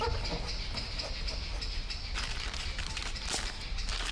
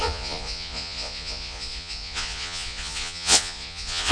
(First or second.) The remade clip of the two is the second